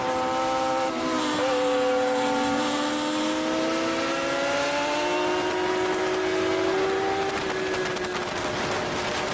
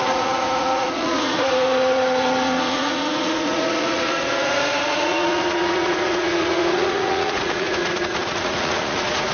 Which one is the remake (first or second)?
second